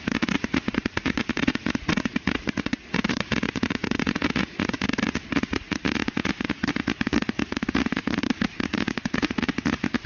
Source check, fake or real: fake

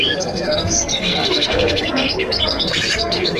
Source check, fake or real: fake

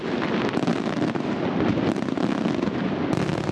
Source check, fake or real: real